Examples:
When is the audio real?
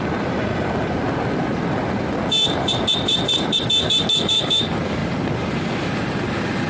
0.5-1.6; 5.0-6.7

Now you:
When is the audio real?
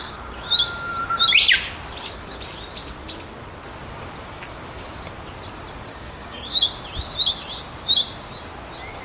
0.0-5.9; 6.7-9.0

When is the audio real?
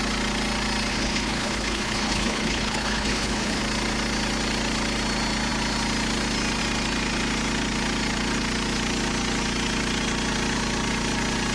0.0-0.9; 3.6-11.5